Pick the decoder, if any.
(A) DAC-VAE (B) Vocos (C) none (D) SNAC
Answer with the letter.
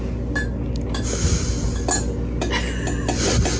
C